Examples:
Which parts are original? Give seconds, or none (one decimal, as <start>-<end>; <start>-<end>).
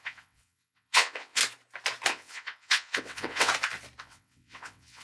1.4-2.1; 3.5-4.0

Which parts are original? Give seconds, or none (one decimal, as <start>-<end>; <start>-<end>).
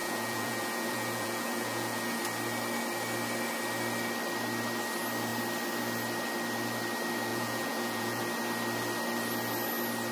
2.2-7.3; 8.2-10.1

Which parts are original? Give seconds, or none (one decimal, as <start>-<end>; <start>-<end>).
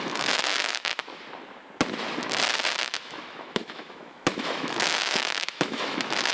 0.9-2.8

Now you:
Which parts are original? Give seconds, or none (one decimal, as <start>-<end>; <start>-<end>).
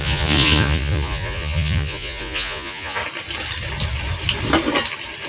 3.0-5.3